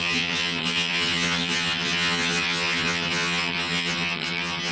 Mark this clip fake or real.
fake